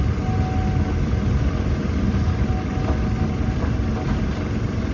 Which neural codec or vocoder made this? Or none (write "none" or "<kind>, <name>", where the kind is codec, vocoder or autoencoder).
none